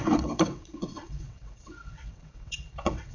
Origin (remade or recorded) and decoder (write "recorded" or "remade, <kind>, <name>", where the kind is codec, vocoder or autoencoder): remade, vocoder, WaveNeXt